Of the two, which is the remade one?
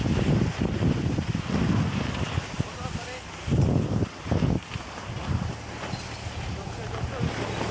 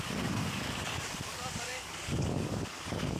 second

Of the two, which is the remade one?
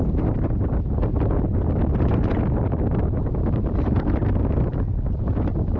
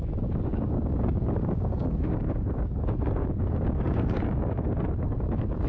second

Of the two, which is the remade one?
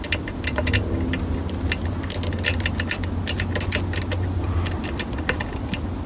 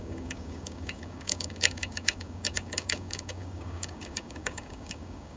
second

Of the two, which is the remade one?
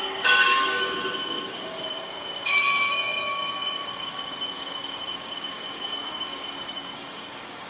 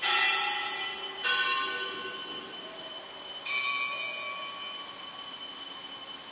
first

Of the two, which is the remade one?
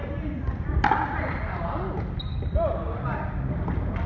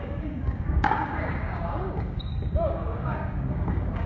second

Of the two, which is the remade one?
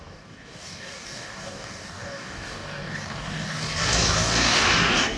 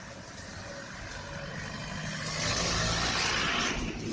first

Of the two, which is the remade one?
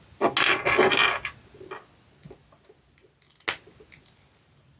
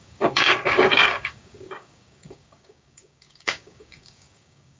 second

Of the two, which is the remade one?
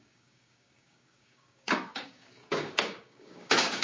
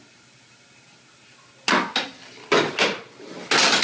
first